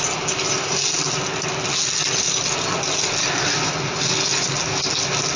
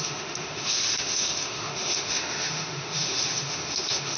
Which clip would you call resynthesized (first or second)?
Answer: second